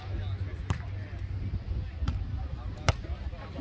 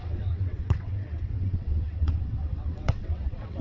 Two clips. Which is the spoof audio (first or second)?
second